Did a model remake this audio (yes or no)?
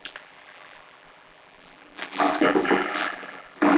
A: yes